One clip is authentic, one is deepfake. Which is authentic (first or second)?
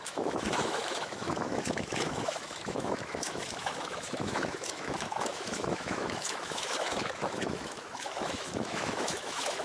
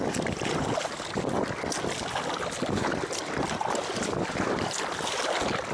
second